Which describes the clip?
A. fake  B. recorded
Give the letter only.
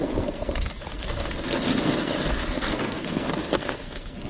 A